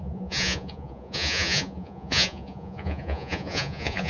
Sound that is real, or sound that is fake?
fake